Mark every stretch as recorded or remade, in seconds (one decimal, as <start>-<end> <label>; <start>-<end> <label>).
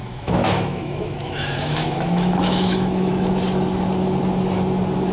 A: 0.0-3.1 remade; 3.1-5.1 recorded